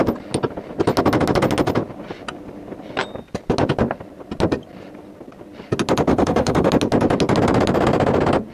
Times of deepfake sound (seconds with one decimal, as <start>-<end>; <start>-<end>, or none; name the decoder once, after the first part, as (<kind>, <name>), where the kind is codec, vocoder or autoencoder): 6.1-6.7 (codec, SNAC)